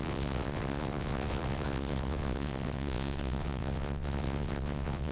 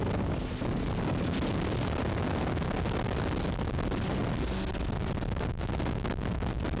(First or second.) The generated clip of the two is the first